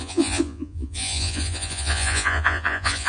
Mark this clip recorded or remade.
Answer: remade